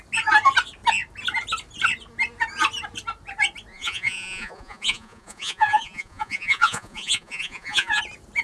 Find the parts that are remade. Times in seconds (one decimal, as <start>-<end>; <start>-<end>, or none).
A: 3.7-8.0